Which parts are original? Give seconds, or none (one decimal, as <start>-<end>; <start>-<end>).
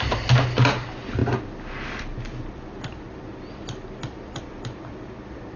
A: 0.0-5.6